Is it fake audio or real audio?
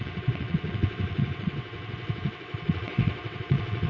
fake